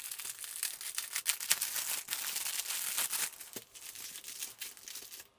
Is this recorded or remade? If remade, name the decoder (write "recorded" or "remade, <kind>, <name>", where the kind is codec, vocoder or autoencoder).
recorded